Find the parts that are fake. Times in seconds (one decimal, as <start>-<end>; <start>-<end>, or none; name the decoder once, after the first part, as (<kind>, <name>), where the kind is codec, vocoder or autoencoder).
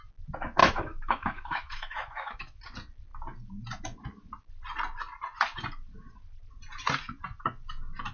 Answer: 0.6-2.6 (autoencoder, DAC-VAE)